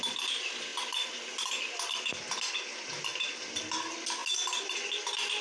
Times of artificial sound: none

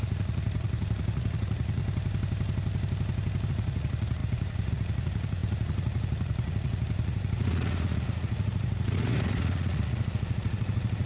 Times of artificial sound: 0.0-1.8 (vocoder, Vocos); 3.5-11.1